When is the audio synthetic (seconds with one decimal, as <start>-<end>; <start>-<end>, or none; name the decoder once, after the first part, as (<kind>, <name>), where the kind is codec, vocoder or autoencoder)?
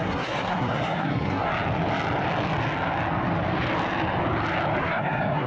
0.0-1.5 (codec, SNAC); 4.8-5.5